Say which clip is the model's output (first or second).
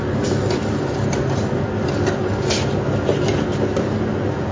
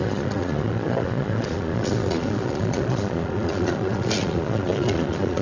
second